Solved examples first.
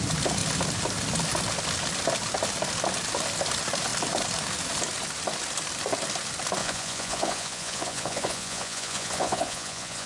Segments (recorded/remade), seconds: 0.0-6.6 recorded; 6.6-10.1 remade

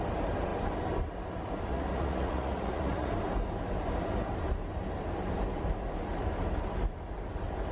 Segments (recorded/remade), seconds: 0.0-1.7 recorded; 1.7-3.1 remade; 3.1-7.7 recorded

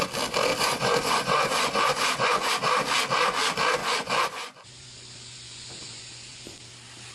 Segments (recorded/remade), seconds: 0.0-0.5 recorded; 0.5-2.5 remade; 2.5-3.8 recorded; 3.8-6.6 remade; 6.6-7.1 recorded

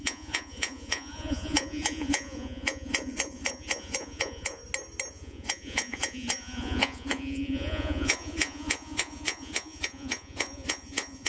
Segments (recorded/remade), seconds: 0.0-4.6 remade; 4.6-5.1 recorded; 5.1-11.3 remade

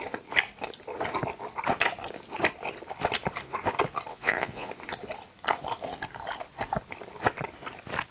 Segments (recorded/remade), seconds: 0.0-4.1 recorded; 4.1-4.7 remade; 4.7-8.1 recorded

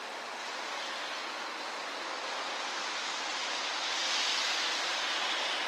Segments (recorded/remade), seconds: 0.0-5.7 recorded

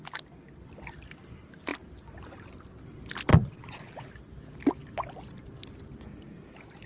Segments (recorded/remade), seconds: 0.0-3.3 recorded; 3.3-4.1 remade; 4.1-6.9 recorded

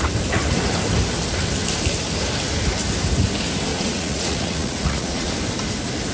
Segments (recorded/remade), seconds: 0.0-3.7 recorded; 3.7-5.3 remade; 5.3-6.1 recorded